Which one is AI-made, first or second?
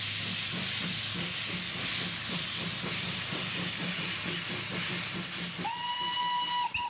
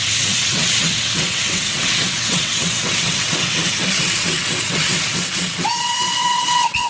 second